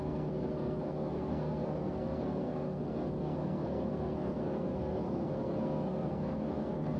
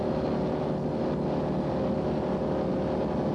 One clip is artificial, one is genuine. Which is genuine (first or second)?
second